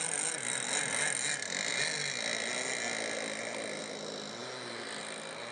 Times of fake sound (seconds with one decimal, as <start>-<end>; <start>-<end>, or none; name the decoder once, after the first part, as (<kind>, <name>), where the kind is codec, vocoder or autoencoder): none